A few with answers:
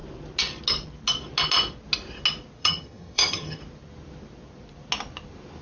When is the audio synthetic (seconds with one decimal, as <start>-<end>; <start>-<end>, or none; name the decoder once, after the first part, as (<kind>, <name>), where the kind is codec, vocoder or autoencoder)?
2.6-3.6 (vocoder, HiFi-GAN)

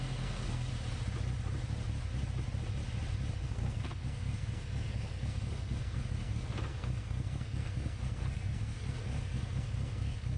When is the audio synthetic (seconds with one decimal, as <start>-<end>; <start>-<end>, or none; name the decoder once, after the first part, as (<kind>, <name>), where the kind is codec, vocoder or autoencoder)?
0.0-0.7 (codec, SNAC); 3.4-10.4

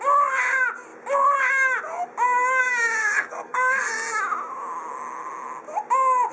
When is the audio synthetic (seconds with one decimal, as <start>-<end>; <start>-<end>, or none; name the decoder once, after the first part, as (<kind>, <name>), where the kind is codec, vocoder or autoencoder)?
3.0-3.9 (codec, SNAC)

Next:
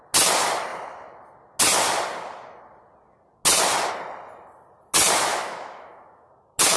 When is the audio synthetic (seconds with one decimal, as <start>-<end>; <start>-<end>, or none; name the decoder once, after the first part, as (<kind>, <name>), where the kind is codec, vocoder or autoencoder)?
5.3-6.3 (autoencoder, DAC-VAE)

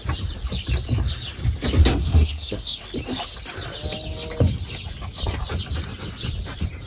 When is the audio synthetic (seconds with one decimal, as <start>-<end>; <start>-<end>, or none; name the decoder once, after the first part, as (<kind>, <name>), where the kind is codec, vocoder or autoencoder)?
1.8-2.8 (codec, SNAC)

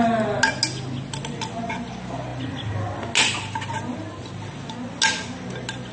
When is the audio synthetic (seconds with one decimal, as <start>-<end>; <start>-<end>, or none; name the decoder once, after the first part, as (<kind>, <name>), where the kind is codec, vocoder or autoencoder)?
none

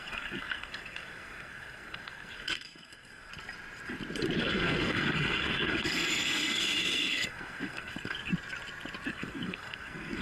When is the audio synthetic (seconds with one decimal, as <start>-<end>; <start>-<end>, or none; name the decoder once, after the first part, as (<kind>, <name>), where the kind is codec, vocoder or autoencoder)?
0.0-3.3 (codec, SNAC); 4.4-8.3; 9.1-10.2

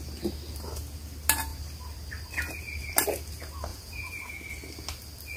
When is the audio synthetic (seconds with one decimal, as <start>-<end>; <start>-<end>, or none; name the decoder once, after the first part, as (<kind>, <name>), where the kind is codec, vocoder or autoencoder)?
3.7-4.3 (vocoder, Vocos)